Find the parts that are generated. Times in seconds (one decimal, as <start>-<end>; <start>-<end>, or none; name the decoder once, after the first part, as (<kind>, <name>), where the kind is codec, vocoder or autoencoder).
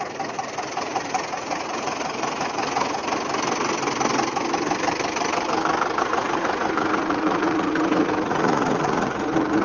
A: 0.0-3.0 (vocoder, Vocos); 6.0-9.6